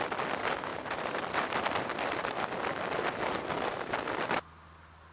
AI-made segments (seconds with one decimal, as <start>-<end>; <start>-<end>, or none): 0.7-2.2